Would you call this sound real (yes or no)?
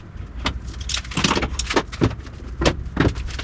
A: yes